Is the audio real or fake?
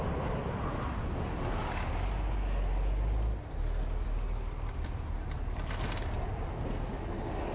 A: real